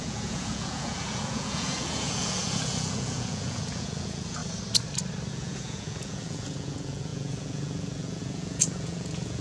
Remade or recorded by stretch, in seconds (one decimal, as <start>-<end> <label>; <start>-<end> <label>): 0.0-4.4 remade; 4.4-5.3 recorded; 5.3-9.4 remade

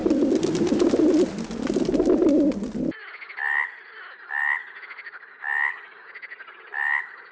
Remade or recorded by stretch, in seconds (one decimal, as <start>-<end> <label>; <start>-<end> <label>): 0.0-7.3 recorded